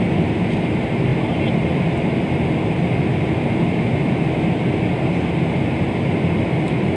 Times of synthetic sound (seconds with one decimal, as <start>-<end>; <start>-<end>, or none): none